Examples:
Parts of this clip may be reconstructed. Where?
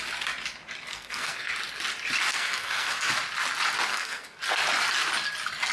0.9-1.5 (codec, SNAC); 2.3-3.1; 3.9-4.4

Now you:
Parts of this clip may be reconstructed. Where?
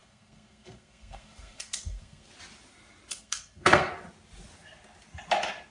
0.0-2.3 (codec, SNAC); 3.1-3.9